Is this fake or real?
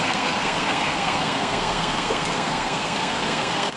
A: fake